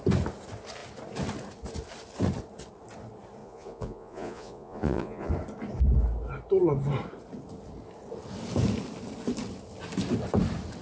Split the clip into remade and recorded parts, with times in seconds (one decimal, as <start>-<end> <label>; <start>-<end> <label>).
0.0-3.4 recorded; 3.4-5.3 remade; 5.3-10.8 recorded